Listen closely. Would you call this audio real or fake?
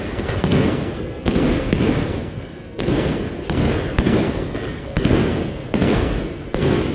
fake